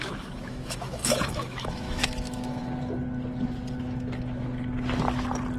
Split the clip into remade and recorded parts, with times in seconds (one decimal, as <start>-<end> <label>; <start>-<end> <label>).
0.0-2.6 remade; 2.6-5.6 recorded